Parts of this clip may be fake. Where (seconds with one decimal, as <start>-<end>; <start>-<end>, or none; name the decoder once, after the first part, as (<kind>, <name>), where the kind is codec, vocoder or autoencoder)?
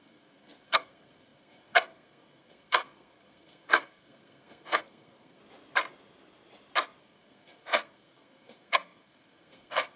0.0-5.4 (codec, SNAC); 7.0-10.0